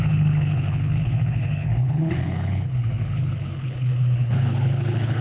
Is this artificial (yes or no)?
yes